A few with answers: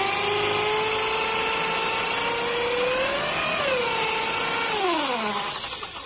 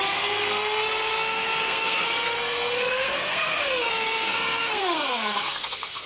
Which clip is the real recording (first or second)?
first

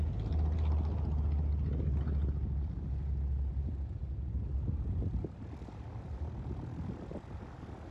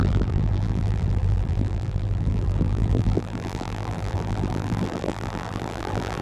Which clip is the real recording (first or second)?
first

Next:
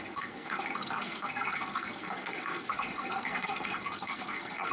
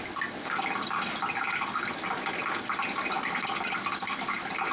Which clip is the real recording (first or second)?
second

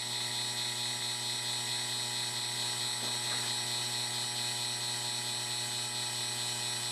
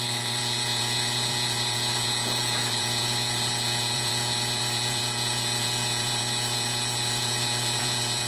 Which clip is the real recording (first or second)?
first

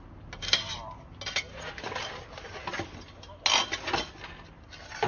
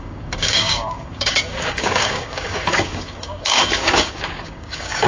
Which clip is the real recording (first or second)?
first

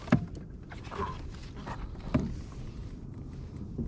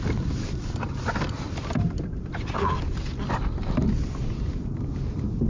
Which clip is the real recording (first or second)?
second